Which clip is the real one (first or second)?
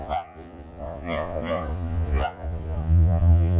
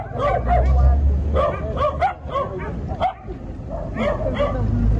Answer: second